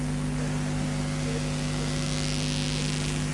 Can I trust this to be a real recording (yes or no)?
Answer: yes